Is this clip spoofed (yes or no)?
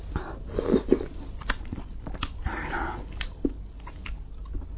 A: no